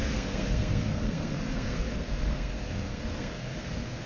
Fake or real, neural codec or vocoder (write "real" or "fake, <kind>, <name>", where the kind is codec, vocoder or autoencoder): fake, codec, SNAC